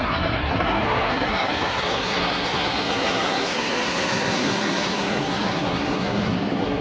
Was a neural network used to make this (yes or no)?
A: yes